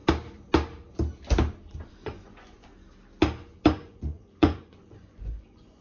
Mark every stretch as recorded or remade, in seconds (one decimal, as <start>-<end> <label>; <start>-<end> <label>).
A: 0.0-1.9 recorded; 1.9-2.7 remade; 2.7-3.7 recorded; 3.7-5.8 remade